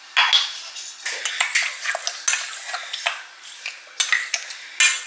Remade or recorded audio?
recorded